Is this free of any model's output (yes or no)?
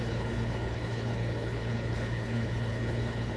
no